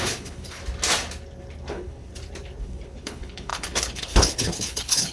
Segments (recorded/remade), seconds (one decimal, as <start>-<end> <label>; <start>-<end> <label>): 0.0-0.6 remade; 0.6-1.7 recorded; 1.7-2.1 remade; 2.1-2.6 recorded; 2.6-5.1 remade

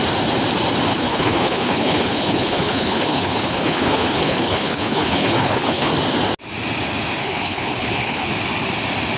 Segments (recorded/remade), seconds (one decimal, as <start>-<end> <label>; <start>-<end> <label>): 0.0-0.9 recorded; 0.9-5.9 remade; 5.9-7.2 recorded; 7.2-8.3 remade; 8.3-9.2 recorded

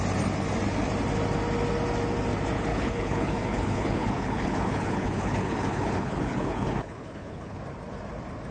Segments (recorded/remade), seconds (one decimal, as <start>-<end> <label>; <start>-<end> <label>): 0.0-2.7 recorded; 2.7-7.6 remade; 7.6-8.5 recorded

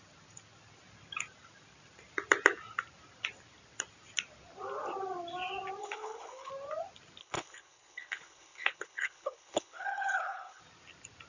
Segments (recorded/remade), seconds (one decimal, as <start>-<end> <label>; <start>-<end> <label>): 0.0-5.8 recorded; 5.8-6.5 remade; 6.5-7.2 recorded; 7.2-10.6 remade; 10.6-11.3 recorded